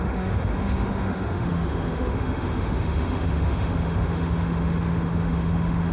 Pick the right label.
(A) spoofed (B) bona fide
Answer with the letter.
A